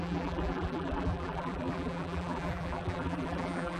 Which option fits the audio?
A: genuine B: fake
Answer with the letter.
B